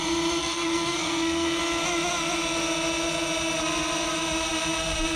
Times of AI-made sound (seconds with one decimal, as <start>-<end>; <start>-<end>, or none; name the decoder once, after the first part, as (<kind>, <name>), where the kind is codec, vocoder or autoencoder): 0.4-1.6 (codec, SNAC)